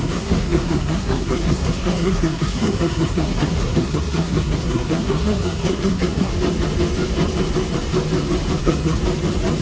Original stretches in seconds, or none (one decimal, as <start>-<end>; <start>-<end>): 6.3-8.6; 9.0-9.6